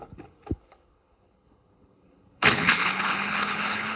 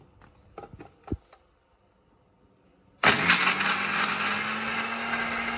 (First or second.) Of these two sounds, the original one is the second